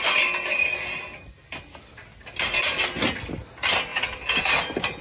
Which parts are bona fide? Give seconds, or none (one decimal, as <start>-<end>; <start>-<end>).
0.0-5.0